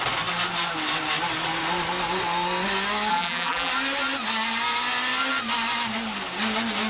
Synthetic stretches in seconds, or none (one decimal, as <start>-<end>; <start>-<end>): 3.1-3.7